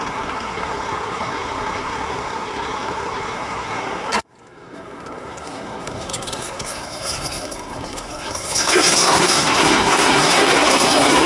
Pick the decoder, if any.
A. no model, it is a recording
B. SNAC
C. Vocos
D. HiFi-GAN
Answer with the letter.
B